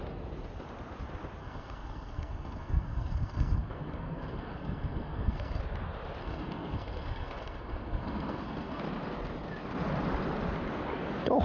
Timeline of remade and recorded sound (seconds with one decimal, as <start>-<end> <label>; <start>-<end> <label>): 0.0-1.4 recorded; 1.4-5.6 remade; 5.6-6.2 recorded; 6.2-8.8 remade; 8.8-11.4 recorded